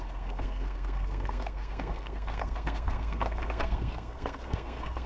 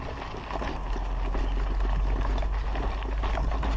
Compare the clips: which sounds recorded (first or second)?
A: second